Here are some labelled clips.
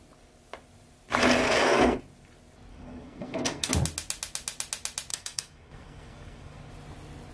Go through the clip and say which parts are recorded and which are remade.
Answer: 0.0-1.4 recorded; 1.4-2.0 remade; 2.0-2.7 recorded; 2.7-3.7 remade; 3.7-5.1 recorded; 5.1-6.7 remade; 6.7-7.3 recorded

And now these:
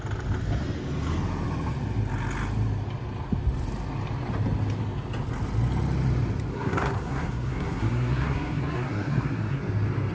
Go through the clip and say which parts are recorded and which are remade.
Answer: 0.0-6.5 recorded; 6.5-9.6 remade; 9.6-10.1 recorded

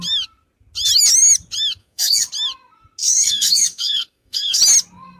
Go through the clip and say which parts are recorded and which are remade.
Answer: 0.0-1.8 recorded; 1.8-2.3 remade; 2.3-3.0 recorded; 3.0-4.6 remade; 4.6-5.2 recorded

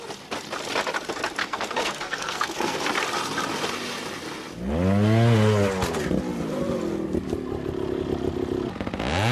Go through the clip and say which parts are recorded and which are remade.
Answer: 0.0-1.4 recorded; 1.4-2.8 remade; 2.8-9.3 recorded

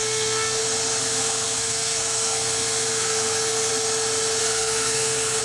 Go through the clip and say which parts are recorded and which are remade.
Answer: 0.0-0.6 remade; 0.6-1.0 recorded; 1.0-3.7 remade; 3.7-4.4 recorded; 4.4-5.4 remade

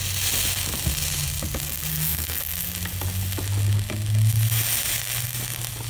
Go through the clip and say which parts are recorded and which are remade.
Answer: 0.0-1.9 recorded; 1.9-2.4 remade; 2.4-5.9 recorded